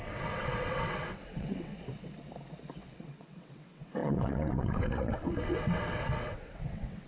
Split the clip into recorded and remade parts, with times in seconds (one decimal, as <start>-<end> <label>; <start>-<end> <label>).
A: 0.0-1.7 remade; 1.7-2.8 recorded; 2.8-7.1 remade